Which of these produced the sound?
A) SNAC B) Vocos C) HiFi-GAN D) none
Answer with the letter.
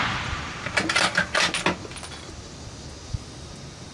D